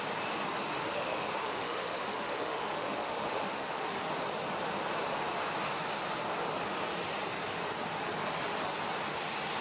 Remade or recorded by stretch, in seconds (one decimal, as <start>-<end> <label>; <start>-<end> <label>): 0.0-0.8 recorded; 0.8-4.1 remade; 4.1-9.6 recorded